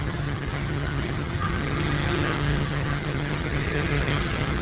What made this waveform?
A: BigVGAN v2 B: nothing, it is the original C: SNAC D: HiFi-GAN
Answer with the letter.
D